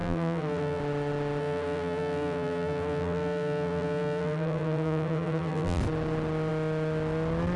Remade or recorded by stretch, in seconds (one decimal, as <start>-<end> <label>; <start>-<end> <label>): 0.0-0.8 remade; 0.8-1.4 recorded; 1.4-5.8 remade; 5.8-7.6 recorded